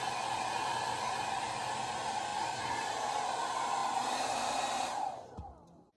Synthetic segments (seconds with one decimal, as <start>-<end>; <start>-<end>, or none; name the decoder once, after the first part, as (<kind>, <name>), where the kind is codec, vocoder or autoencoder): none